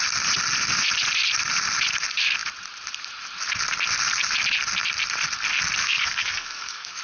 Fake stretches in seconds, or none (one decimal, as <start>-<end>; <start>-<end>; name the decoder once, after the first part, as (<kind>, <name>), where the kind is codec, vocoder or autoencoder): 5.8-7.0 (codec, SNAC)

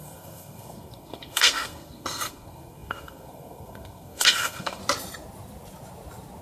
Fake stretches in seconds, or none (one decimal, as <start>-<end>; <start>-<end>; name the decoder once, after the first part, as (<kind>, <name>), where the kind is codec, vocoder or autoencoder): 0.0-4.8 (codec, SNAC)